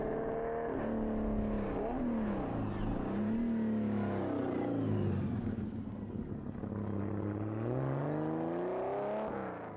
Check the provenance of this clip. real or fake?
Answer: real